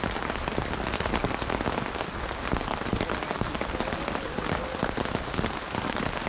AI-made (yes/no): no